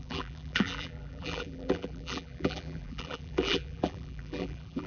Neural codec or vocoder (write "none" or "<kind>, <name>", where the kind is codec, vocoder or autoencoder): vocoder, BigVGAN v2